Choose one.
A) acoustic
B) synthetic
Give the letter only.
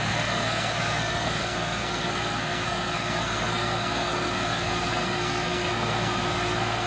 B